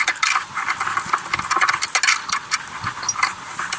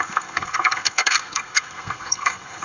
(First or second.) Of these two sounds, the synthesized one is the second